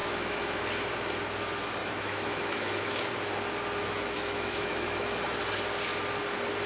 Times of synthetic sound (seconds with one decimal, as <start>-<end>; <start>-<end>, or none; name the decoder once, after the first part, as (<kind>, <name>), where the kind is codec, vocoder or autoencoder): 0.0-0.6 (autoencoder, DAC-VAE); 1.8-3.1; 3.8-5.4